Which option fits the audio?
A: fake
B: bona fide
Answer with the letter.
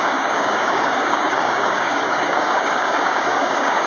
A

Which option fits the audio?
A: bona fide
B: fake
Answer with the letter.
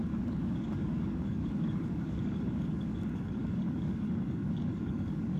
B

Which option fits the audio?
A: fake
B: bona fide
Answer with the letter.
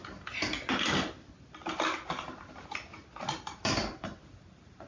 B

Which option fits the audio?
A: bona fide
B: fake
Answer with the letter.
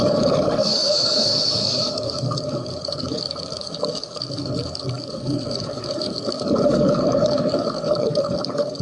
B